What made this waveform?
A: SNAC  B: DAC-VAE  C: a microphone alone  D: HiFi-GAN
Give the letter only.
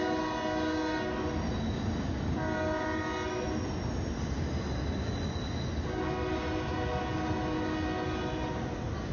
C